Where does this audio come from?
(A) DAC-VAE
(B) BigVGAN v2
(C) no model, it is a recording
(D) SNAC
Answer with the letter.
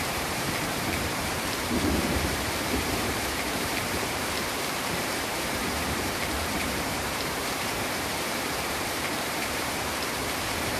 B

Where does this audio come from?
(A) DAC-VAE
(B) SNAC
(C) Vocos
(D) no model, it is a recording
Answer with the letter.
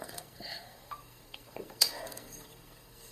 B